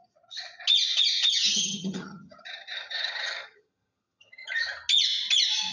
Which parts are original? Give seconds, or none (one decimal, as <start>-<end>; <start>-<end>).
0.0-1.2; 4.5-5.7